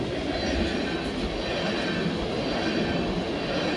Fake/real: real